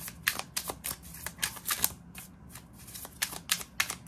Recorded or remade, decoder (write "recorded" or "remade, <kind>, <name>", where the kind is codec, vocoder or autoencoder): recorded